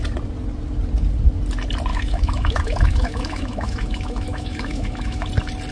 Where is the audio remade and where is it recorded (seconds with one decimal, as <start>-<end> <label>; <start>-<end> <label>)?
0.0-1.9 recorded; 1.9-5.3 remade; 5.3-5.7 recorded